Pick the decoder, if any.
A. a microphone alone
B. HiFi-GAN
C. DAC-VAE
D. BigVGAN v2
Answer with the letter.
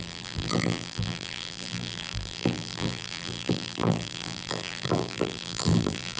D